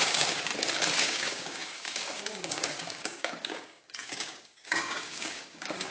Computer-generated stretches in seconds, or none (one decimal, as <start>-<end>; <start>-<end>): 0.0-0.5; 1.0-5.9